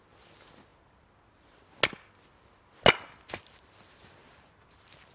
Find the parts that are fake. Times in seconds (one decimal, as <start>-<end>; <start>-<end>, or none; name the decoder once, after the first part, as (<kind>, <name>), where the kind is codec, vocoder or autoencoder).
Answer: none